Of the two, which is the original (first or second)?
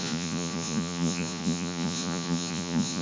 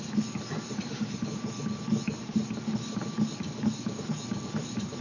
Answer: second